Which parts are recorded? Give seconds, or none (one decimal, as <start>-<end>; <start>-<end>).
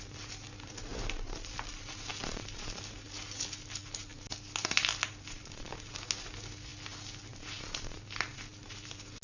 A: 0.0-9.2